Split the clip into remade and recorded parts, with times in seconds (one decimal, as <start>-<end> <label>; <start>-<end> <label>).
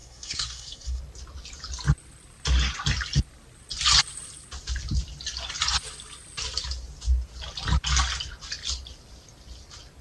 0.0-1.0 remade; 1.0-10.0 recorded